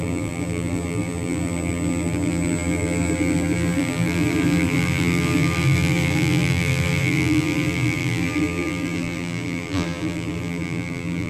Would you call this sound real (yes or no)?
no